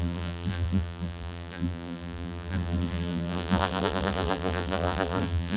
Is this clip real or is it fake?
fake